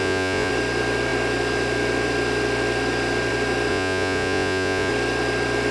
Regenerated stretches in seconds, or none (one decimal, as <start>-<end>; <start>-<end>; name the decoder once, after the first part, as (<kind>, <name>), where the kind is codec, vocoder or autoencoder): 0.0-0.5 (vocoder, Vocos); 3.7-4.9